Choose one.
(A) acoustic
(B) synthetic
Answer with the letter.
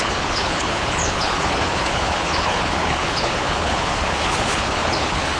B